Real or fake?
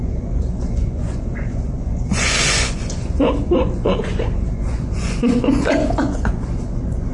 fake